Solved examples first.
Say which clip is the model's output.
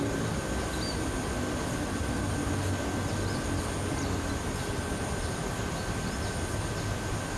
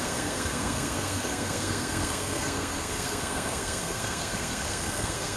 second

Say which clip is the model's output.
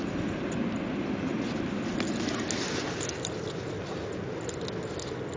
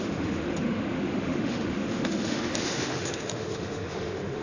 second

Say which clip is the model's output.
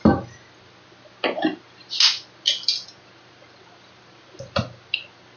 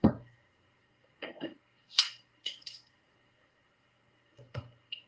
second